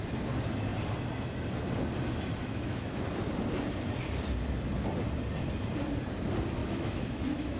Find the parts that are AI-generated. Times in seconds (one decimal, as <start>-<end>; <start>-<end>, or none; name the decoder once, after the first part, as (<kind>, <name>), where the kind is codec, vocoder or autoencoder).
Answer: 2.4-3.1 (autoencoder, DAC-VAE); 6.6-7.6